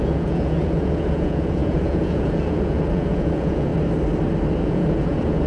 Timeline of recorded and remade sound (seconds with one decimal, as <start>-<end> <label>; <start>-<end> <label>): 0.0-3.7 remade; 3.7-4.6 recorded; 4.6-5.5 remade